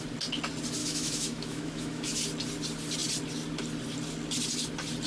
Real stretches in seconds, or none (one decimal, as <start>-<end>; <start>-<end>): 0.0-0.8; 2.2-5.1